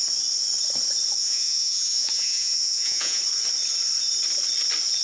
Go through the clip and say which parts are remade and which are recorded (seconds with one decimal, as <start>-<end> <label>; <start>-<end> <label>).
0.0-1.2 recorded; 1.2-3.2 remade; 3.2-5.0 recorded